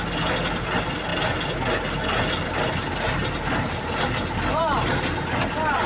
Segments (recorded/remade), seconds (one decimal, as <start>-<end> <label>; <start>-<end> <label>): 0.0-5.9 recorded